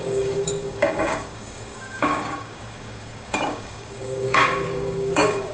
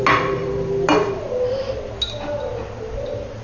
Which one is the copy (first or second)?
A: first